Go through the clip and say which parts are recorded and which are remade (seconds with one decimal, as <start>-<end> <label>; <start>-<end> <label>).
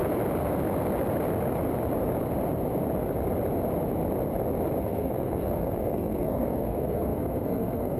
0.0-4.8 recorded; 4.8-8.0 remade